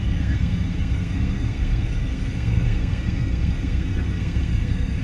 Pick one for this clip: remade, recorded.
remade